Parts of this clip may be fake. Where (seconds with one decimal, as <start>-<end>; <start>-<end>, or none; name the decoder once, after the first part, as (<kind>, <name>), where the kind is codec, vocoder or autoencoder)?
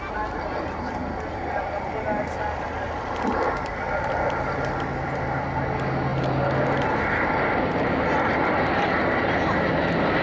none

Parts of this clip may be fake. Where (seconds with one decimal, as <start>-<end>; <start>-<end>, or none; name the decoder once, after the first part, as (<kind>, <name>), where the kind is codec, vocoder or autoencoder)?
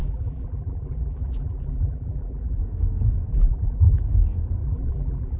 0.0-2.6 (vocoder, BigVGAN v2); 3.3-4.0; 4.6-5.4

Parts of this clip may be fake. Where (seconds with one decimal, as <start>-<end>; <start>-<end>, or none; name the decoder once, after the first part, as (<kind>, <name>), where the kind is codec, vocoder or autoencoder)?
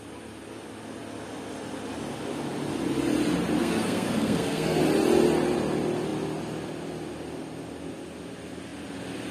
3.6-4.8 (codec, SNAC)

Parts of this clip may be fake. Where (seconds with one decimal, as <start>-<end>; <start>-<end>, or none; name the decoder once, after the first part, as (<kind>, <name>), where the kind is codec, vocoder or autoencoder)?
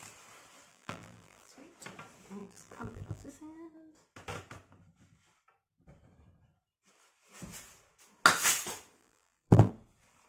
0.7-1.5 (vocoder, BigVGAN v2); 2.4-3.3; 9.0-9.7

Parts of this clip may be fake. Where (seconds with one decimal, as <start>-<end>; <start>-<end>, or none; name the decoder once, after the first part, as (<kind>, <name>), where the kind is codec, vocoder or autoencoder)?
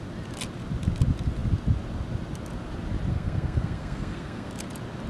3.1-4.5 (codec, SNAC)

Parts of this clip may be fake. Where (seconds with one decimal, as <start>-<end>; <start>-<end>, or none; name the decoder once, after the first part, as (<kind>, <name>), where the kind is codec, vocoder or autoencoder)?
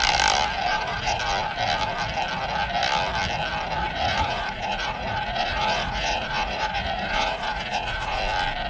0.7-1.2 (vocoder, Vocos); 3.8-8.2